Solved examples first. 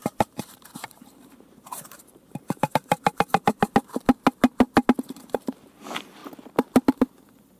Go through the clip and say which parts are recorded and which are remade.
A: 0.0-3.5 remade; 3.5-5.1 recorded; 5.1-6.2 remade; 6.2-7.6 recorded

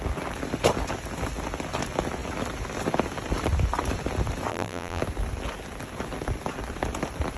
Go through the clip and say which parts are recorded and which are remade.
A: 0.0-4.5 recorded; 4.5-5.0 remade; 5.0-7.4 recorded

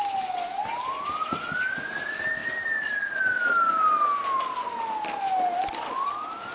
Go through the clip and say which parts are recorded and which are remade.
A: 0.0-6.5 recorded

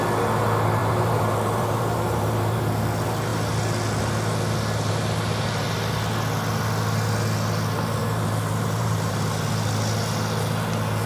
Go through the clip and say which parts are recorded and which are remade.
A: 0.0-0.8 recorded; 0.8-2.6 remade; 2.6-8.0 recorded; 8.0-9.5 remade; 9.5-11.1 recorded

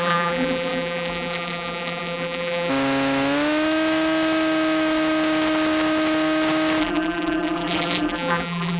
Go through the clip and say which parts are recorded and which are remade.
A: 0.0-2.7 remade; 2.7-6.8 recorded; 6.8-8.8 remade

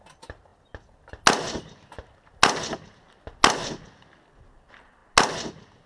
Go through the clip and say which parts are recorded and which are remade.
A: 0.0-5.9 recorded

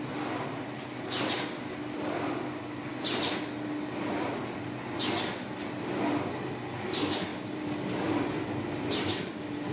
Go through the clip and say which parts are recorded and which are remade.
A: 0.0-7.3 recorded; 7.3-9.7 remade

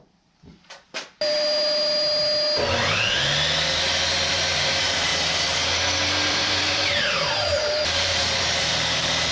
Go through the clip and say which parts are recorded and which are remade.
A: 0.0-0.5 remade; 0.5-4.3 recorded; 4.3-5.1 remade; 5.1-6.3 recorded; 6.3-9.3 remade